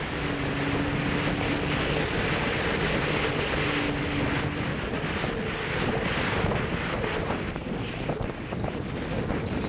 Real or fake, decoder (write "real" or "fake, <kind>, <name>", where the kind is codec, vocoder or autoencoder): real